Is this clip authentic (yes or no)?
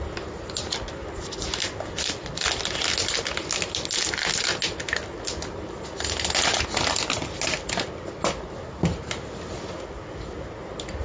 yes